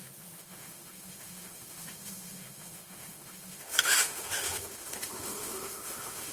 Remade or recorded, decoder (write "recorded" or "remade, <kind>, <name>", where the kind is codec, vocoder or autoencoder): remade, autoencoder, DAC-VAE